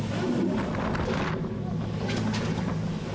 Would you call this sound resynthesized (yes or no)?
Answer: no